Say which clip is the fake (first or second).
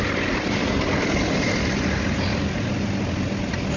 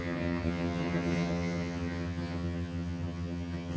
second